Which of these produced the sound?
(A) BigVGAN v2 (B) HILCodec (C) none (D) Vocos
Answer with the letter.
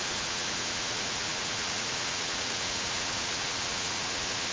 D